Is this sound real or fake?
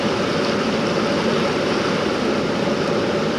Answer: real